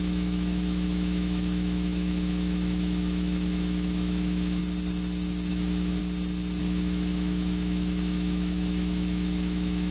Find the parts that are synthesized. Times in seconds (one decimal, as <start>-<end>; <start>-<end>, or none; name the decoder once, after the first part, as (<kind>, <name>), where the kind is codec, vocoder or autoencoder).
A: 0.0-4.6 (autoencoder, DAC-VAE); 5.5-6.0; 6.6-9.9